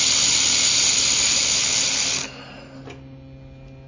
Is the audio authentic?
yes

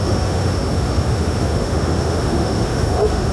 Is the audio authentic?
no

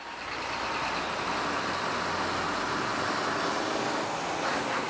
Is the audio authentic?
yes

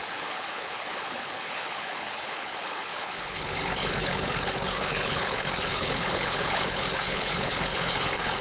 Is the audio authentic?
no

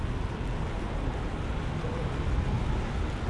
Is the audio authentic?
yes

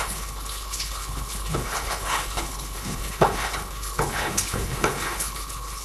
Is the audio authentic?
no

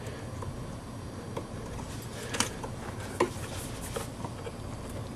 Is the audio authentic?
yes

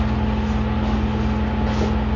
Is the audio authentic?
yes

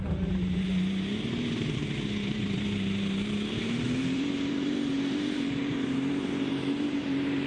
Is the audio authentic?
no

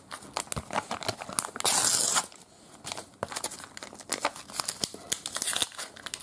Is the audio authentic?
yes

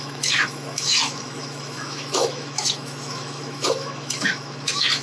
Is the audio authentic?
no